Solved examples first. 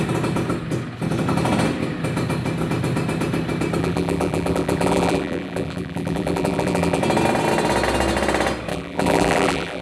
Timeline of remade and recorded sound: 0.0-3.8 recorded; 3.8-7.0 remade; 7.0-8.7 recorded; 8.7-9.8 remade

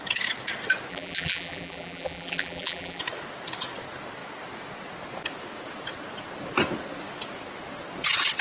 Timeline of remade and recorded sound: 0.0-0.9 recorded; 0.9-3.0 remade; 3.0-8.4 recorded